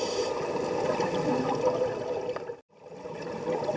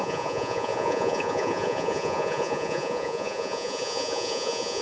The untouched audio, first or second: first